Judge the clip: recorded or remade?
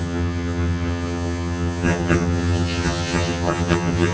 remade